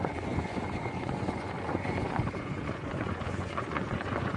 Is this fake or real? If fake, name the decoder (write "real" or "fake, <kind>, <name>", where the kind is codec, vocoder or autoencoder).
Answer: fake, vocoder, Vocos